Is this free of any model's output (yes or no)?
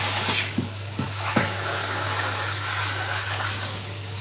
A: no